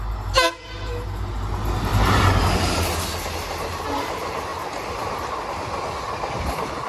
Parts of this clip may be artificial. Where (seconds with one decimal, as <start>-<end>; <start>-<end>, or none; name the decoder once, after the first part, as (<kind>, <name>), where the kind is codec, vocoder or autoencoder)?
1.9-2.9 (vocoder, BigVGAN v2)